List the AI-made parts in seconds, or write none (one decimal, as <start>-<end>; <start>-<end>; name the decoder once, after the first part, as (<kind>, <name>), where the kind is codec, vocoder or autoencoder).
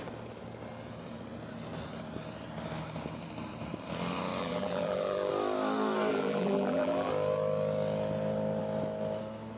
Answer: 4.4-5.3 (vocoder, BigVGAN v2); 6.1-7.1